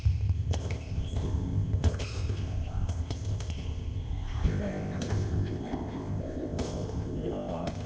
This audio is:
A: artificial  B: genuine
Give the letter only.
A